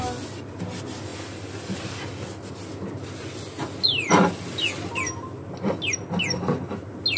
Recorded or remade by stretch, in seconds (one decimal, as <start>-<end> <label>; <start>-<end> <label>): 0.0-7.2 recorded